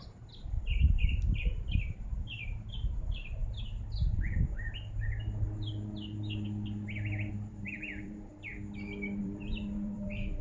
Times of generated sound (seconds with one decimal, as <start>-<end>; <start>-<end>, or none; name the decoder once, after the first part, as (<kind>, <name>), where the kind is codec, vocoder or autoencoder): 0.0-3.4 (vocoder, BigVGAN v2); 7.3-8.5; 9.2-10.4